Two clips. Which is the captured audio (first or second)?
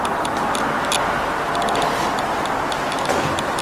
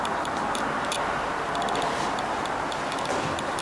first